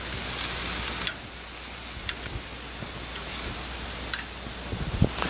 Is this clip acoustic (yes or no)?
yes